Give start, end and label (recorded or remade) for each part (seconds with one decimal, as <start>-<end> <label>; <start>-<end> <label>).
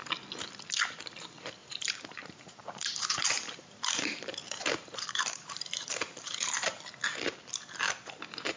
0.0-1.6 recorded; 1.6-6.8 remade; 6.8-8.6 recorded